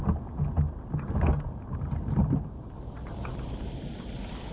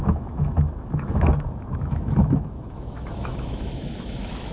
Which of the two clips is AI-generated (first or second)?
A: second